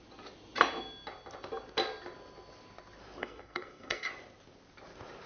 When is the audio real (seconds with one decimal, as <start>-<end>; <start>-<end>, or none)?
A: 0.0-3.2; 4.1-5.3